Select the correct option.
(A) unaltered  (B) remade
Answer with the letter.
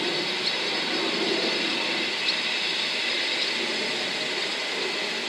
A